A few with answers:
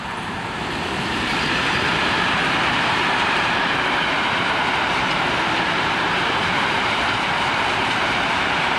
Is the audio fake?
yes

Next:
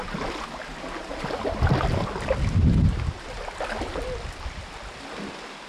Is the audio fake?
no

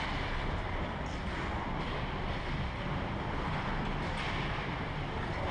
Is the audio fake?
yes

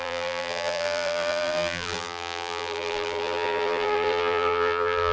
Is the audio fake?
yes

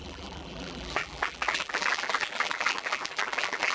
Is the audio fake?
yes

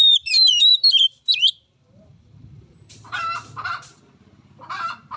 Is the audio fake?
yes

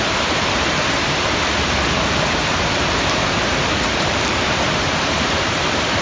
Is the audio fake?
yes